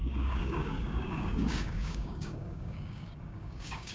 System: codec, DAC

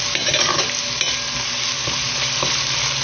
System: none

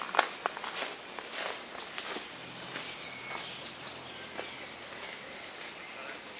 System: none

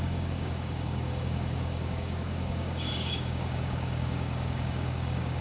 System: codec, DAC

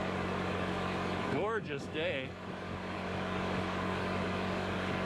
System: codec, DAC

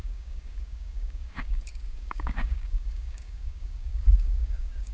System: codec, DAC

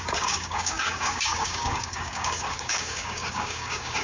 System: codec, DAC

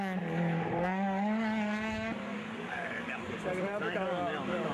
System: codec, DAC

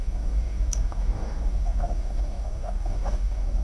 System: codec, DAC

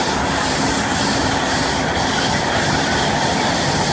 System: none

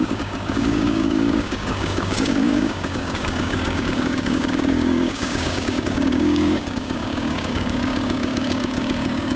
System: codec, DAC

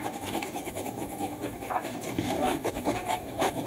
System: codec, DAC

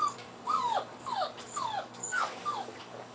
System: codec, DAC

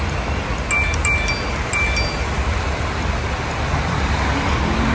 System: none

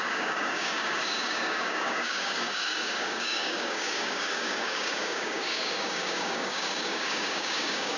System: codec, DAC